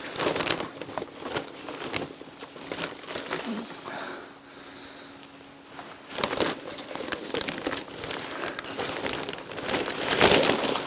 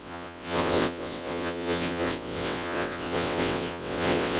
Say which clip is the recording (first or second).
first